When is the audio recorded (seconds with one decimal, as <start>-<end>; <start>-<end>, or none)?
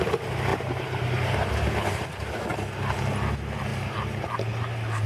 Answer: 0.0-0.5; 1.5-5.1